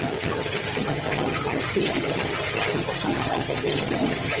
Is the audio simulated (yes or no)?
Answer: yes